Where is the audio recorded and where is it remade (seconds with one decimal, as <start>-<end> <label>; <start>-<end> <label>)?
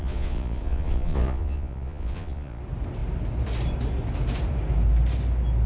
0.0-2.6 remade; 2.6-5.7 recorded